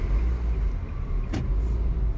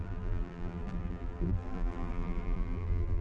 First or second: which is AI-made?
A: second